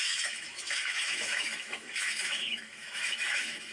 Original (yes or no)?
no